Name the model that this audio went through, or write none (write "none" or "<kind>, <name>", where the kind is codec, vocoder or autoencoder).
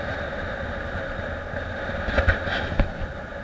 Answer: none